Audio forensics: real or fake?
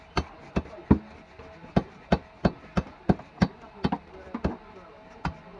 real